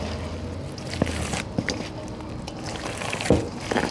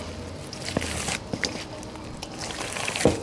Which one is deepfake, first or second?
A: second